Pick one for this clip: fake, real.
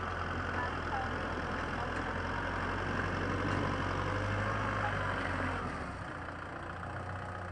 real